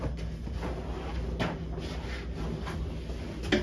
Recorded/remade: recorded